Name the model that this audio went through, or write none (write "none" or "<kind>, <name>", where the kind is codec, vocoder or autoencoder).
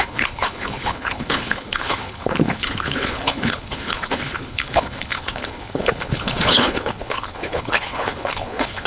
codec, HILCodec